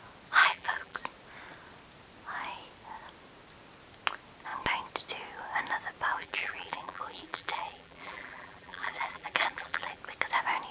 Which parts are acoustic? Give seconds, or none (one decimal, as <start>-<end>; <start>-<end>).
0.0-0.4; 1.0-6.1; 10.0-10.7